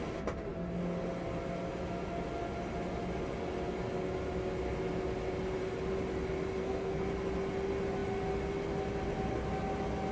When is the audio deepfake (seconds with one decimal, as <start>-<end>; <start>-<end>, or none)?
6.6-7.1